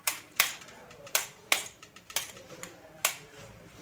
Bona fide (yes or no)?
no